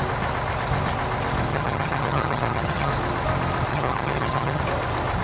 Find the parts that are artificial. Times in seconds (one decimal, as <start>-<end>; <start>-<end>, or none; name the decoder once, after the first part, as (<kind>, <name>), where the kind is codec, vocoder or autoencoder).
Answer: 1.5-2.9 (vocoder, HiFi-GAN); 3.7-4.6